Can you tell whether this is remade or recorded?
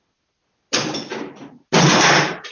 recorded